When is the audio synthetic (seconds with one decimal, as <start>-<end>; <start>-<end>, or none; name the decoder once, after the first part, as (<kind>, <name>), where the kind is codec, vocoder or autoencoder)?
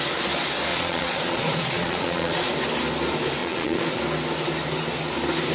0.7-2.5 (vocoder, Vocos); 3.4-4.0